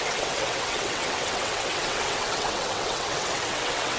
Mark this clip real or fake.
fake